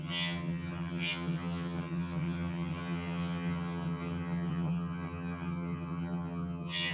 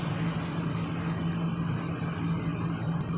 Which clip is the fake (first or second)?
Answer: first